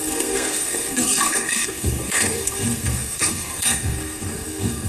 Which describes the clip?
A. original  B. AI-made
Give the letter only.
B